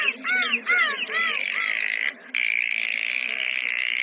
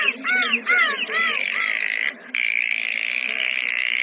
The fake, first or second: second